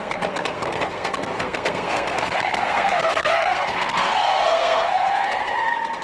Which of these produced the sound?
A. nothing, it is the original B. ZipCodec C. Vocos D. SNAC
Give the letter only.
D